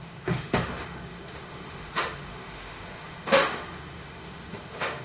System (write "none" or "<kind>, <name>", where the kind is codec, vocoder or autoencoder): autoencoder, DAC-VAE